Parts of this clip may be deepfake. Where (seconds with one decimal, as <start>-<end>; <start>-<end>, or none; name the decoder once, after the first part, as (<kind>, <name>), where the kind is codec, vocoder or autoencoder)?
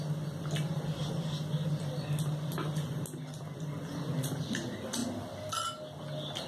none